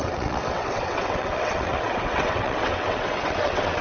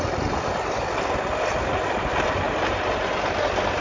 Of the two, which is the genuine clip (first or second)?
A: second